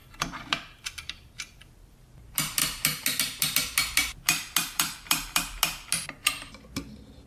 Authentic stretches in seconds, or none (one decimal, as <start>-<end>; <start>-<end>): 2.1-4.6; 5.4-7.3